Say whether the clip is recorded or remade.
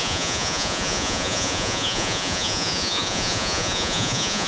remade